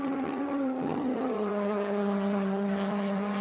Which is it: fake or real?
fake